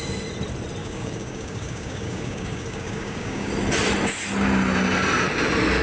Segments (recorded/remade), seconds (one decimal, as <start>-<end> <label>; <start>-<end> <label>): 0.0-0.8 recorded; 0.8-3.5 remade; 3.5-5.8 recorded